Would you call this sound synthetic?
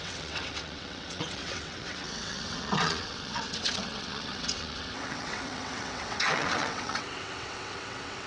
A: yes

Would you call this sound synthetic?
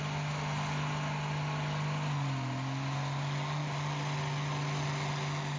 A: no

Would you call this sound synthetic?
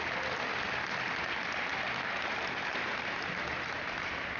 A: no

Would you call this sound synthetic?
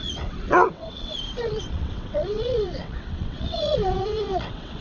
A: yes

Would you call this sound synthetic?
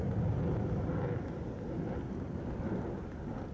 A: no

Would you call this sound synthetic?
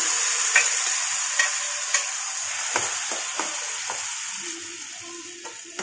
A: no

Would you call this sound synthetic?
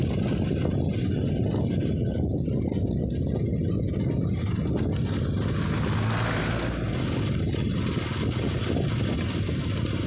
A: no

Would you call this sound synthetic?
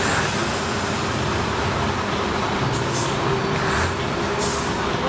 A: no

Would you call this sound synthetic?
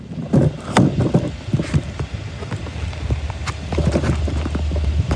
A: no